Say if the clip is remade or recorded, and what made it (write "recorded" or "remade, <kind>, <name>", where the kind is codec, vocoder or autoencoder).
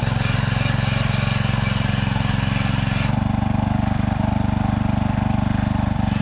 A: recorded